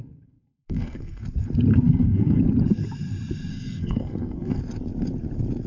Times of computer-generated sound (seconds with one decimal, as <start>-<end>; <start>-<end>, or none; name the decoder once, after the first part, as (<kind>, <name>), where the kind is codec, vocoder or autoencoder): 0.0-1.2 (codec, SNAC); 1.7-2.4; 3.5-4.6